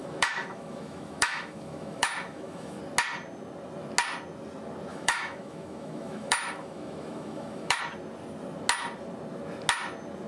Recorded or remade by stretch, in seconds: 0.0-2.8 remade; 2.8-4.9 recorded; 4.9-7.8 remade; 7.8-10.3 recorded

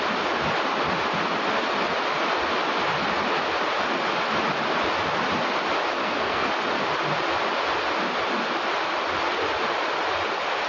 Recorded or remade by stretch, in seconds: 0.0-6.0 recorded; 6.0-6.5 remade; 6.5-10.7 recorded